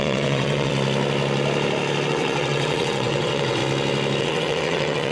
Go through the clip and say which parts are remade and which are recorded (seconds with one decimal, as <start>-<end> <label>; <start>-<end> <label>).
0.0-0.7 remade; 0.7-2.1 recorded; 2.1-3.6 remade; 3.6-4.2 recorded; 4.2-5.1 remade